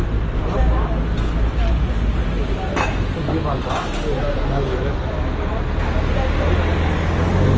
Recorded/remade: recorded